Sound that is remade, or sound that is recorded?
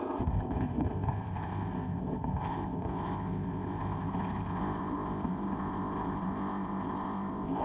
remade